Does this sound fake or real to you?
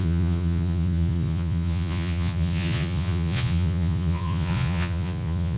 fake